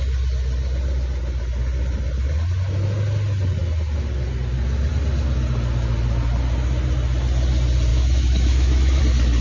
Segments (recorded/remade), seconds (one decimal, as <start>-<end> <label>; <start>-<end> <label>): 0.0-7.9 recorded; 7.9-9.0 remade; 9.0-9.4 recorded